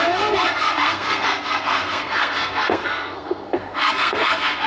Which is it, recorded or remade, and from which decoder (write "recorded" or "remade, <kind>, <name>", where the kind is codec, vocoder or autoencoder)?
remade, codec, SNAC